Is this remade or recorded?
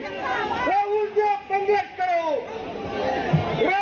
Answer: recorded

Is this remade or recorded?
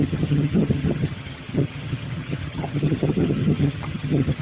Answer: remade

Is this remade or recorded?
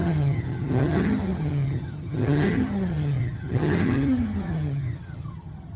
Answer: remade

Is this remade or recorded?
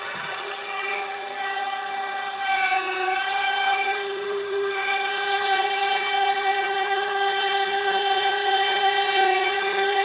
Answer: remade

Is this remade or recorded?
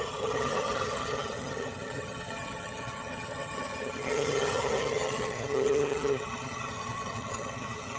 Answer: remade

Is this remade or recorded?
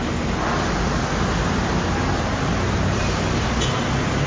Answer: recorded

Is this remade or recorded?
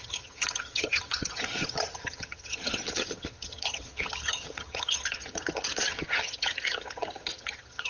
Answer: remade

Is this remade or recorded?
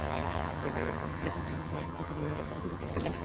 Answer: remade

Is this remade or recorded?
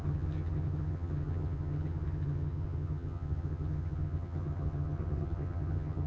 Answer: remade